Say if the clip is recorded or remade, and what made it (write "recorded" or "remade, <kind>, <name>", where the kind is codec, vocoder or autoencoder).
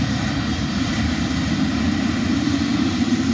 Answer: remade, vocoder, BigVGAN v2